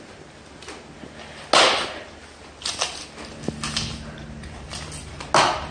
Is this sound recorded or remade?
recorded